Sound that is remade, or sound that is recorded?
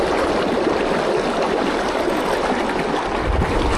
recorded